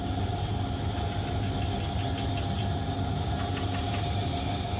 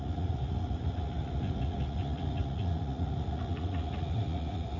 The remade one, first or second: second